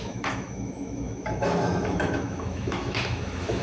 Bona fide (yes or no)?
no